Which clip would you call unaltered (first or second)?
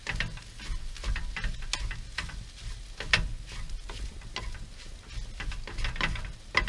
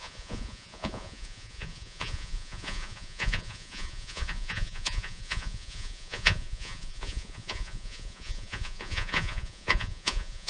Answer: first